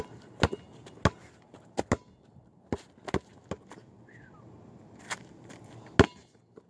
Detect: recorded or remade recorded